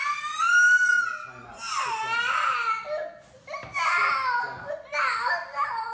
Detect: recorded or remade recorded